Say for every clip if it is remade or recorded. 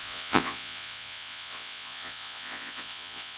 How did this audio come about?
remade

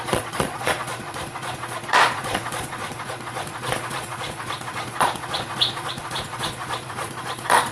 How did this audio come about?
remade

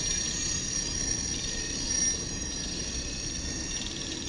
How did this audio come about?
recorded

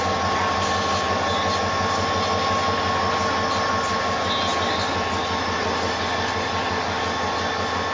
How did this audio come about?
recorded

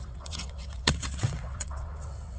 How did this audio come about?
remade